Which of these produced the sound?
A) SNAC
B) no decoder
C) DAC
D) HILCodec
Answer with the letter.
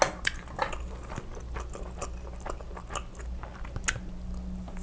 B